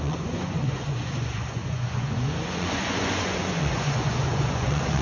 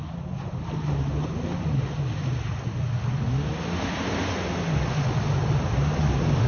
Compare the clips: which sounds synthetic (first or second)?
first